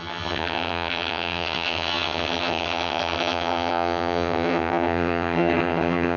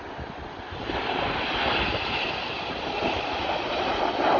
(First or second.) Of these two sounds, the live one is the second